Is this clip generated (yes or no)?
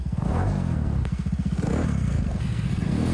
yes